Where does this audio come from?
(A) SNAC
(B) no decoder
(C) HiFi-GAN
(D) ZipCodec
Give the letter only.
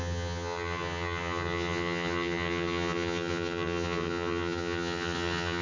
C